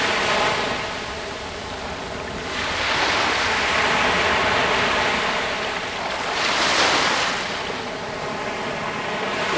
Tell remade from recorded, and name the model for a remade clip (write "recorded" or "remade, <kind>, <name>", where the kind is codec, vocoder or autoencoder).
recorded